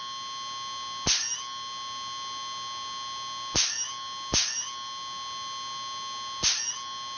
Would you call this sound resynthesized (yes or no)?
no